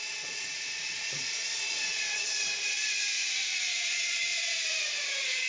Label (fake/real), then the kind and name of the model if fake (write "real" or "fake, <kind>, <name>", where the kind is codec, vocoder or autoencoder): fake, vocoder, Vocos